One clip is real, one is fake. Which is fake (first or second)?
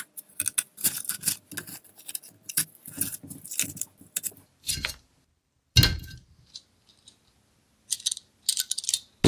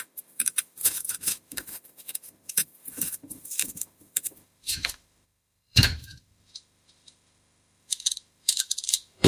second